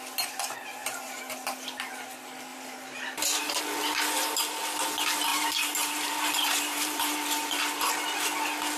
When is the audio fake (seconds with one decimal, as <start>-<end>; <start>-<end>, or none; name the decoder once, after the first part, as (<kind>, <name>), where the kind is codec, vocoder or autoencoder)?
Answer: 0.8-1.3 (vocoder, BigVGAN v2); 2.5-3.6; 5.3-7.9